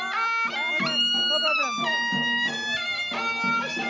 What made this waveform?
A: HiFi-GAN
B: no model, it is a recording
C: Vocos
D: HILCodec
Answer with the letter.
B